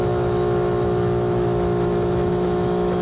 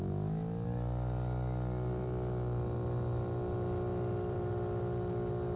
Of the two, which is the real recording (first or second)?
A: second